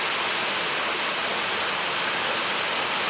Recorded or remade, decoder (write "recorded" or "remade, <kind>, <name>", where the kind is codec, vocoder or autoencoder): recorded